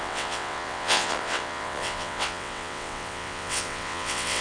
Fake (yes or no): yes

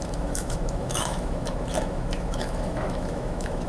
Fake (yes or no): yes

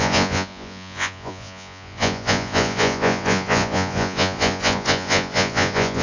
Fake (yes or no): yes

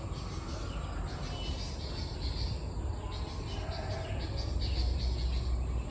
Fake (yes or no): no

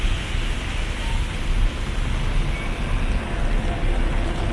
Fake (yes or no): no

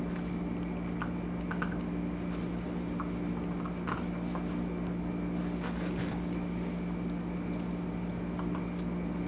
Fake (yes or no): no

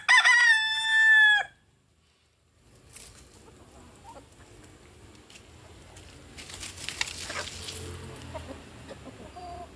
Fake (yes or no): no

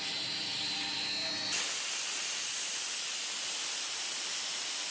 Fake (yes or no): no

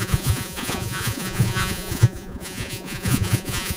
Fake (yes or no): yes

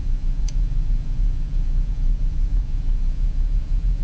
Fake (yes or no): yes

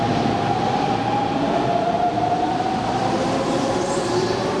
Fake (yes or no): yes